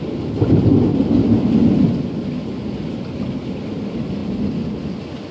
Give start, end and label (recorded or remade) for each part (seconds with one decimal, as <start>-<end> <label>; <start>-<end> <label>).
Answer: 0.0-5.3 recorded